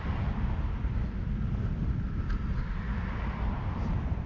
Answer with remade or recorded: remade